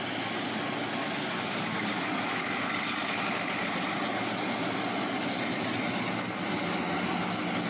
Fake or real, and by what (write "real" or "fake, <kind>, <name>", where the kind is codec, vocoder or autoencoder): real